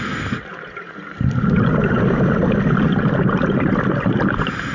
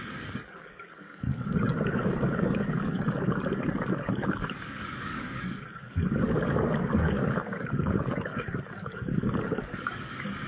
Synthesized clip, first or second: second